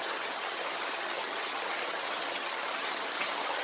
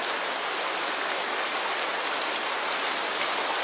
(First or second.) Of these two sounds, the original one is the second